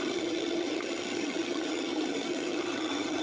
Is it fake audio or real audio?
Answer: fake